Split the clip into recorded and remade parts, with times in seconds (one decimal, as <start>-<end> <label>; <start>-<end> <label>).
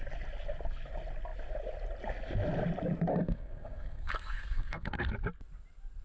0.0-3.1 recorded; 3.1-5.1 remade; 5.1-6.0 recorded